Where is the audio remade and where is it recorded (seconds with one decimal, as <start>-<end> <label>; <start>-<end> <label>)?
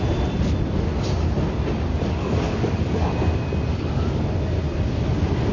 0.0-1.9 recorded; 1.9-3.1 remade; 3.1-3.7 recorded; 3.7-4.2 remade; 4.2-5.5 recorded